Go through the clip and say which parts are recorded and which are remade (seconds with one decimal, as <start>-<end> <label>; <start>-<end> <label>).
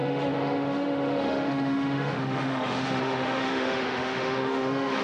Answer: 0.0-5.0 remade